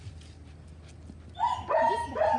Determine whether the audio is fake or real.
real